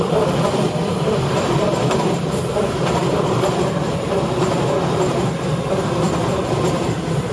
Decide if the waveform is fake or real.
fake